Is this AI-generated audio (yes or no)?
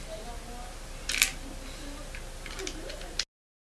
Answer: no